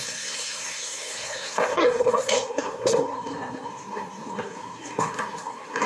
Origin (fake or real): fake